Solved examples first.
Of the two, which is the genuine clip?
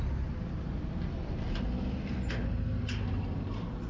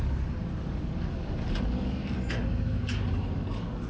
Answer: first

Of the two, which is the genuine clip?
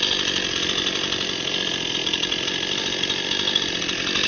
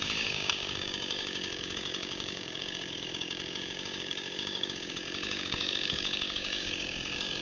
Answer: first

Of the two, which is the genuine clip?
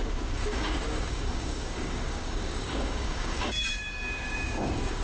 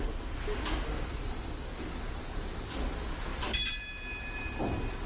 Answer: second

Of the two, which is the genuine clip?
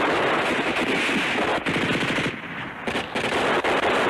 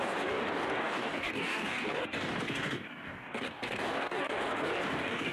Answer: first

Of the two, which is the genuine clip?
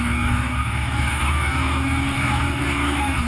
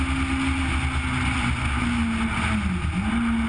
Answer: second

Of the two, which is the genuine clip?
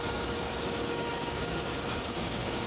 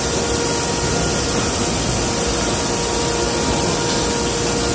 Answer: second